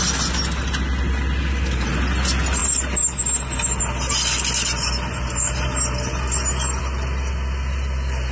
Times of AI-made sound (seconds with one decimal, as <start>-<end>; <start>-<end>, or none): none